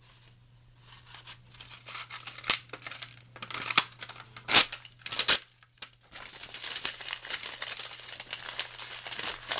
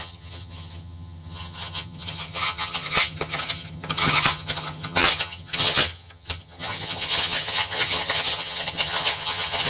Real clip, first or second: first